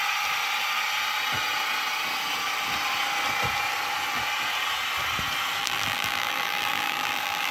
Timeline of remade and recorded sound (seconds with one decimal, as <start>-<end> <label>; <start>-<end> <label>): 0.0-5.6 recorded; 5.6-7.5 remade